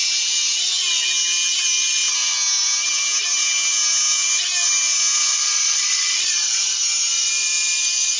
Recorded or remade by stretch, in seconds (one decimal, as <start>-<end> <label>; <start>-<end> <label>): 0.0-5.3 recorded; 5.3-6.8 remade; 6.8-8.2 recorded